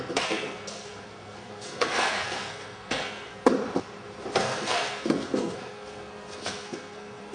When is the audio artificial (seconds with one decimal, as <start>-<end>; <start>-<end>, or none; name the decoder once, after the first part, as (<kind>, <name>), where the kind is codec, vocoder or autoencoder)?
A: 0.0-3.5 (codec, SNAC); 4.4-7.3